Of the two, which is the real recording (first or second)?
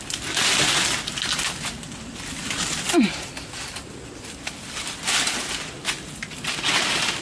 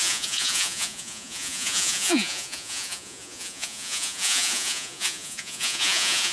first